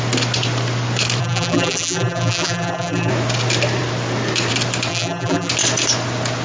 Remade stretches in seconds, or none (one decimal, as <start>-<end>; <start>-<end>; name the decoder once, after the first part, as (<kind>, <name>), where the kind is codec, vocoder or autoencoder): 1.2-3.1 (vocoder, BigVGAN v2); 4.9-5.5

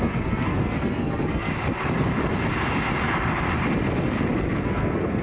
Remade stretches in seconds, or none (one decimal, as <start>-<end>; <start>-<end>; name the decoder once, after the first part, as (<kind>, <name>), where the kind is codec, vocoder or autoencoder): 0.0-1.5 (codec, SNAC); 4.6-5.2

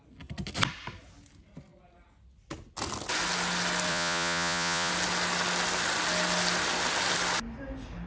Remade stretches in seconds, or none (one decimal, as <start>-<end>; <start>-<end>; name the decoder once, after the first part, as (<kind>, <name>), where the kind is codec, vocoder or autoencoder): 3.9-4.9 (vocoder, Vocos)

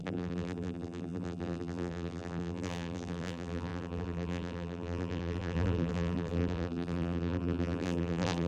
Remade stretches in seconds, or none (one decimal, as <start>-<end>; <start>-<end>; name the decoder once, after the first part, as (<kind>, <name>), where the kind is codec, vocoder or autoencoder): 0.0-8.5 (vocoder, BigVGAN v2)

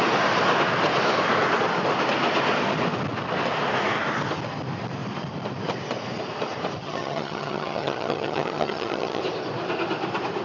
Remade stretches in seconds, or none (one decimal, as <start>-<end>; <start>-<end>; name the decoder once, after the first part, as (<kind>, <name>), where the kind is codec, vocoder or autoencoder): 6.8-9.2 (vocoder, HiFi-GAN)